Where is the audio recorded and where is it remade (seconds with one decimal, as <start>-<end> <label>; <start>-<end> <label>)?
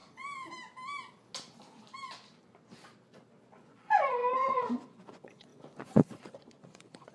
0.0-3.5 recorded; 3.5-7.1 remade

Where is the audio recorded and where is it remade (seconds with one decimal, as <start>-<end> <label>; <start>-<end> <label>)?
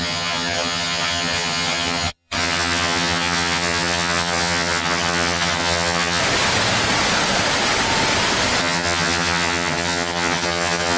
0.0-6.2 remade; 6.2-8.6 recorded; 8.6-11.0 remade